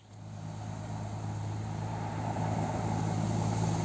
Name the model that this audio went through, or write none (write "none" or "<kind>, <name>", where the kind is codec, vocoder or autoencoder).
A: none